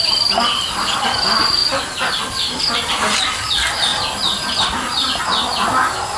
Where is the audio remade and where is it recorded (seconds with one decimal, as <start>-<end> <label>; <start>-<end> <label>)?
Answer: 0.0-6.2 recorded